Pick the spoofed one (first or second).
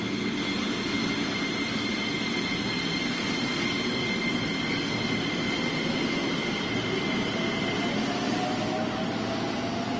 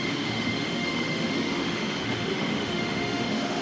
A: second